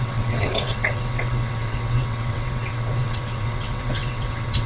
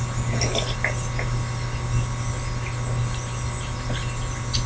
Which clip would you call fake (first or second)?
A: first